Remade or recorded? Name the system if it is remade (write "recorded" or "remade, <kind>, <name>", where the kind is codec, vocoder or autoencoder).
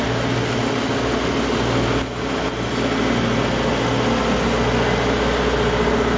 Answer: recorded